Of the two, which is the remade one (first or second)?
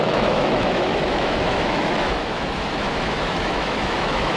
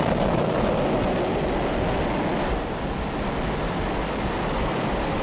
first